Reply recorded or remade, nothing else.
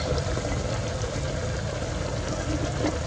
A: recorded